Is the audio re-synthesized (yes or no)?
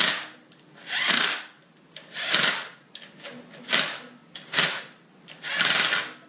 no